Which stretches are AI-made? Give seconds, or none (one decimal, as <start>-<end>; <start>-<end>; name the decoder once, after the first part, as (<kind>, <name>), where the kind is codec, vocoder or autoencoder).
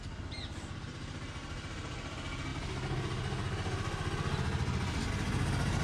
1.4-2.1 (vocoder, BigVGAN v2)